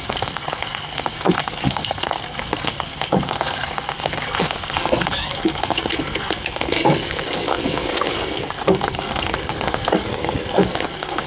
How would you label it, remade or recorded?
remade